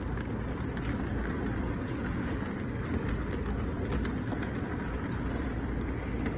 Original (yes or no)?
yes